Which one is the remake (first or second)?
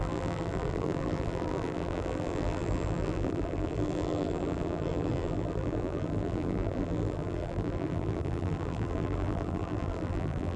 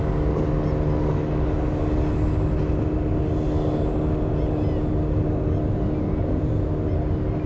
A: first